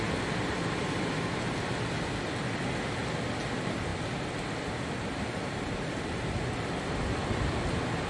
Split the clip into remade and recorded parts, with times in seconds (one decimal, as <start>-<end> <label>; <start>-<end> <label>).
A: 0.0-8.1 recorded